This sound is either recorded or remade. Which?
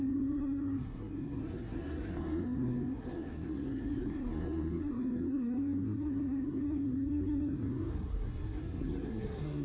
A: remade